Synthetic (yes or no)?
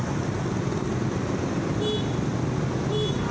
no